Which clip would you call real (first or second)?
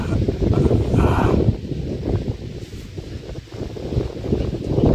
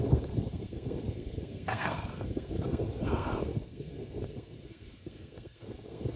first